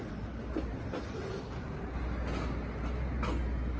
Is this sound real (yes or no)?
yes